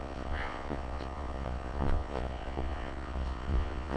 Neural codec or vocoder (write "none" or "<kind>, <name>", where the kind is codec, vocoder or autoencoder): vocoder, Vocos